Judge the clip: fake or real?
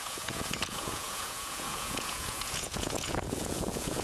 fake